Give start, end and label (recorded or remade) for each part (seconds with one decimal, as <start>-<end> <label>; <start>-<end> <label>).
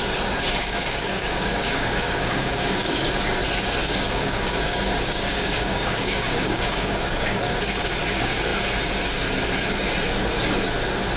0.0-0.6 recorded; 0.6-3.0 remade; 3.0-3.8 recorded; 3.8-7.9 remade; 7.9-11.2 recorded